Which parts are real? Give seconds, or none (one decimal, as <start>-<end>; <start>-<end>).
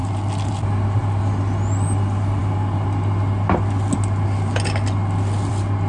0.0-5.9